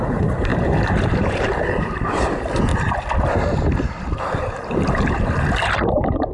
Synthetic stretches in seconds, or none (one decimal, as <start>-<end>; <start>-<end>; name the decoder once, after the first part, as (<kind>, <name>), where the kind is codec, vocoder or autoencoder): 0.0-2.7 (vocoder, BigVGAN v2); 4.5-6.3